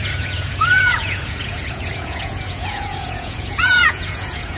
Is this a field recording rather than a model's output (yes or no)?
no